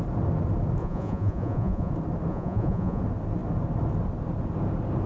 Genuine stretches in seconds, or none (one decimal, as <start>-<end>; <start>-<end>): 0.0-0.8; 1.9-2.3; 3.0-5.1